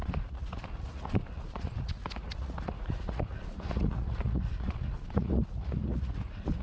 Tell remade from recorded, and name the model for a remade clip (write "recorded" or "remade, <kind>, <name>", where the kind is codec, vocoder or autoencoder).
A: remade, vocoder, Vocos